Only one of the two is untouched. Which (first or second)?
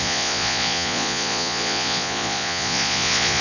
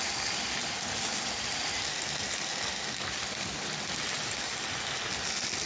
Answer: second